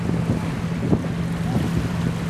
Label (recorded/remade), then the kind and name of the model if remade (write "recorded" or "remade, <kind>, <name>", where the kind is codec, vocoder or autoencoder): recorded